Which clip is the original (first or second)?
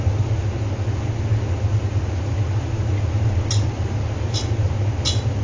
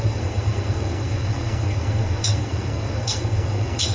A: first